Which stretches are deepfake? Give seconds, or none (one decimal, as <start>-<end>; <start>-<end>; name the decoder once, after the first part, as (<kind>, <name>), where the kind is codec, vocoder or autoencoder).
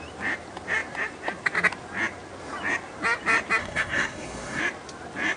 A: 3.6-4.6 (codec, SNAC)